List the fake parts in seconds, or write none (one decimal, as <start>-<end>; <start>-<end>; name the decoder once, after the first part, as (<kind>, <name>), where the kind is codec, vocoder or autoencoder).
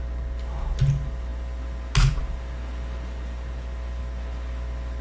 none